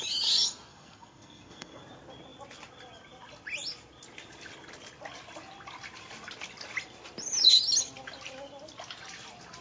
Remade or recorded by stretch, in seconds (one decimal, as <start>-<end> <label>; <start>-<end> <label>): 0.0-0.7 recorded; 0.7-1.8 remade; 1.8-9.6 recorded

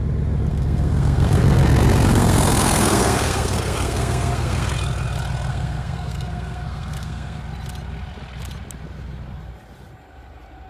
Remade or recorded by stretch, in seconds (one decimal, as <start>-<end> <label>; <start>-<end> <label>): 0.0-0.5 recorded; 0.5-4.7 remade; 4.7-5.5 recorded; 5.5-7.4 remade; 7.4-10.7 recorded